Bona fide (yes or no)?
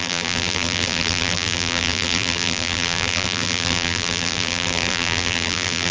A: no